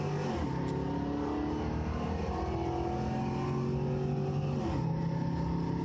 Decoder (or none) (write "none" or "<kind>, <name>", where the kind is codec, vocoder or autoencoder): none